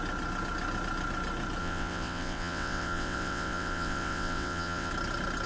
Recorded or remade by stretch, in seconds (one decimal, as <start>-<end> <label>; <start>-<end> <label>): 0.0-1.6 recorded; 1.6-4.9 remade; 4.9-5.5 recorded